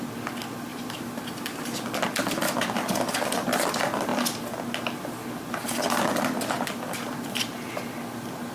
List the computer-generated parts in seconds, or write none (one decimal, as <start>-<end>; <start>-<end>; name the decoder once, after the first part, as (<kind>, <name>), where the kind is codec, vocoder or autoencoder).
0.7-1.4 (vocoder, BigVGAN v2)